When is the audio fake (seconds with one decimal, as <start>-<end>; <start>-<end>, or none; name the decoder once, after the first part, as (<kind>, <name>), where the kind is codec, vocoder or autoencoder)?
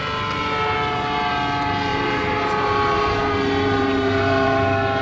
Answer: 1.9-5.0 (vocoder, BigVGAN v2)